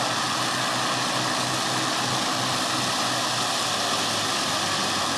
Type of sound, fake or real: real